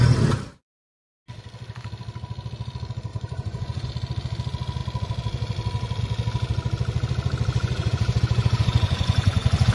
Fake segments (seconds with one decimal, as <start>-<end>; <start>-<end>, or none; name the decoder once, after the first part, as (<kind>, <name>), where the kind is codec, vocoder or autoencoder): 3.1-3.9 (vocoder, Vocos); 7.6-9.7